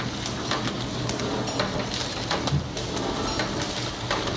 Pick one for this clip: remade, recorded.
recorded